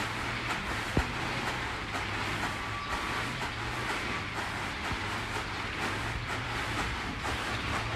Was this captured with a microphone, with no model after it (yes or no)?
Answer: yes